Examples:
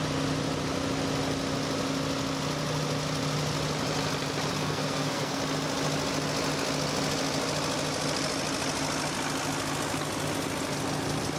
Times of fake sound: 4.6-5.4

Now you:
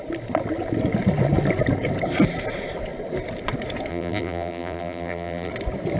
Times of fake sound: 3.9-5.5

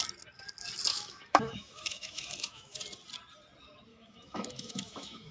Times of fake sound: 0.9-2.8; 3.9-5.3

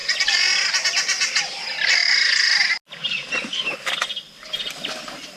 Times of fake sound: none

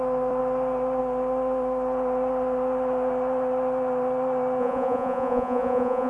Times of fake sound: 4.6-6.1

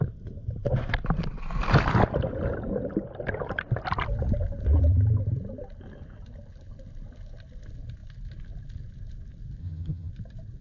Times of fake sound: 9.6-10.1

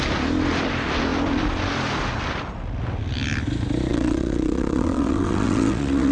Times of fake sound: 3.9-6.1